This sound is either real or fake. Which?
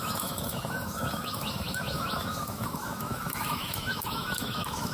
fake